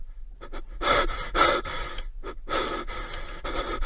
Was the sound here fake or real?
real